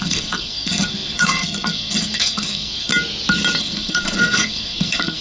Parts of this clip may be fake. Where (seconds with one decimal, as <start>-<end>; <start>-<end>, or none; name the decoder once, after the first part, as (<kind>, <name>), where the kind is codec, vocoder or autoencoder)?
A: 0.0-2.9 (codec, SNAC); 3.6-5.2